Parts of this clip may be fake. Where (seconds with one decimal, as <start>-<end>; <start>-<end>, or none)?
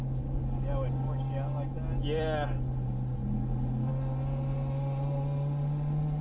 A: none